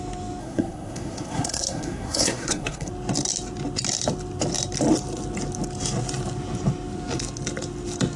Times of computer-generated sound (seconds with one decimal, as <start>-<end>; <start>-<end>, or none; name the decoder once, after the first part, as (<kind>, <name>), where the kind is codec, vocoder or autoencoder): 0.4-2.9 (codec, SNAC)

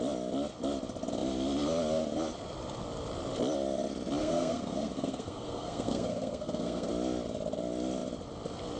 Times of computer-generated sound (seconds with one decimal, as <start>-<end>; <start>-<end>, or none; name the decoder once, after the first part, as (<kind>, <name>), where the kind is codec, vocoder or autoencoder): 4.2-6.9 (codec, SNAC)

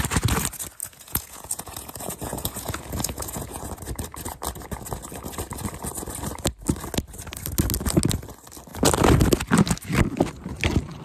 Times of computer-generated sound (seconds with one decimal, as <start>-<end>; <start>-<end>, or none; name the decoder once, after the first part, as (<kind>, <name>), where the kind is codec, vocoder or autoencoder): 0.8-3.7 (vocoder, Vocos)